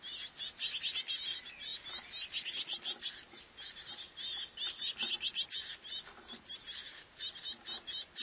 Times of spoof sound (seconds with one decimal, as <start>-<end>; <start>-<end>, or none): none